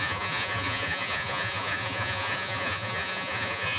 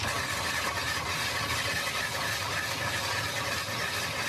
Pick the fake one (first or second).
first